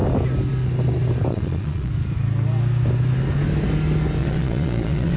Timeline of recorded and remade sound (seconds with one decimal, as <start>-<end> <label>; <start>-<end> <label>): 0.0-1.3 recorded; 1.3-1.9 remade; 1.9-4.2 recorded; 4.2-5.2 remade